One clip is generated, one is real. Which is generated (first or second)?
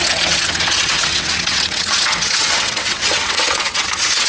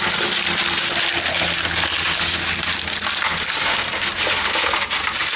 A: first